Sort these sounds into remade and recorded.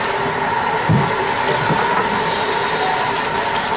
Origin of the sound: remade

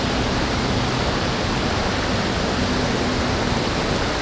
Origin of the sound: recorded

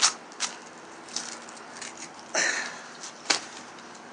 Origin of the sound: recorded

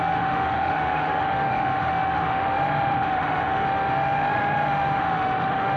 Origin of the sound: remade